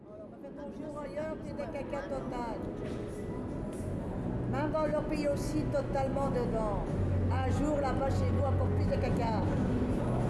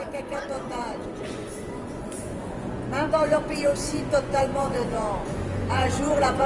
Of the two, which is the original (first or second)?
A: first